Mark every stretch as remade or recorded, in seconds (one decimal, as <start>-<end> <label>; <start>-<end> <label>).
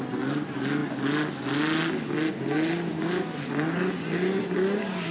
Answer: 0.0-5.1 recorded